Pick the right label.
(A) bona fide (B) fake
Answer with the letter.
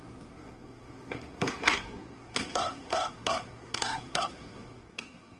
B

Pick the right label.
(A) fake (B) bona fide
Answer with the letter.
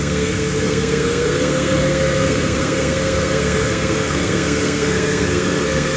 A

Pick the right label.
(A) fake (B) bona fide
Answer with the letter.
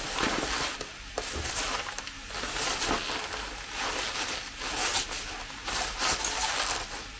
B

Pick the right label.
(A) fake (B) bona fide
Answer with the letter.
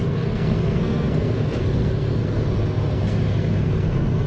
A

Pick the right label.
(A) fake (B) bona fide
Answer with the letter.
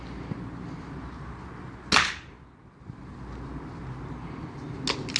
B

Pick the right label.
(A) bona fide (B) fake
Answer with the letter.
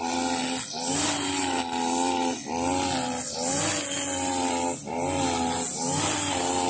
A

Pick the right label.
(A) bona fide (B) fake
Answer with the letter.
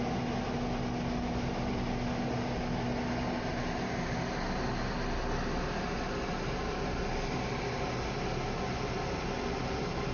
A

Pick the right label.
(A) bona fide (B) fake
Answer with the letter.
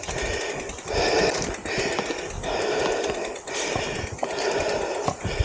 A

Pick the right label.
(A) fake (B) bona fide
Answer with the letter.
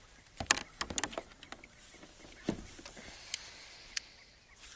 B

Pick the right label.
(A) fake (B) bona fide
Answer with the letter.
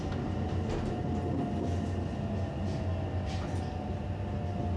B